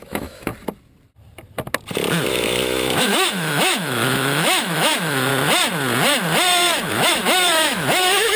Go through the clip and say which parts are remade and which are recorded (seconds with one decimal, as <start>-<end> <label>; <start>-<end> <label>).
0.0-0.5 remade; 0.5-2.3 recorded; 2.3-5.3 remade; 5.3-6.9 recorded; 6.9-8.4 remade